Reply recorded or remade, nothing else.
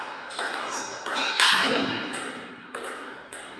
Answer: remade